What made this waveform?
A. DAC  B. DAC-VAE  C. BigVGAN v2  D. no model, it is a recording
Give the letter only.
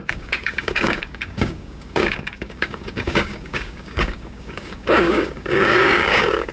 A